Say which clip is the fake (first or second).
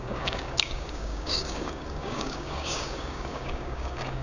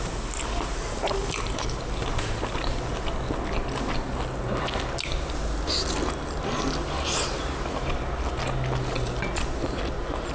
first